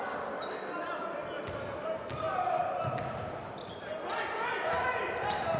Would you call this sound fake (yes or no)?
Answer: no